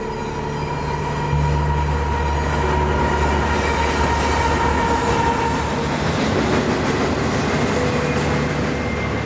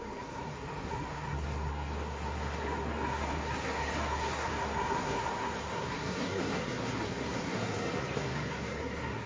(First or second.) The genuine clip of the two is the first